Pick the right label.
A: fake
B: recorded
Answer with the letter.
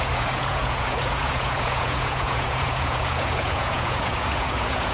A